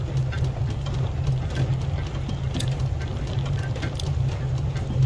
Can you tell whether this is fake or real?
real